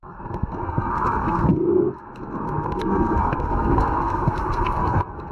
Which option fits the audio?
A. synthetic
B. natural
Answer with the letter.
A